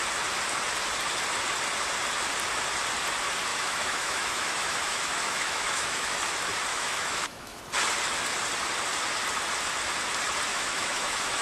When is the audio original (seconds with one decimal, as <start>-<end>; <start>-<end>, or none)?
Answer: 0.0-3.5; 6.2-6.7; 7.6-10.5